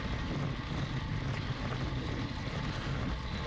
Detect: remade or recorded recorded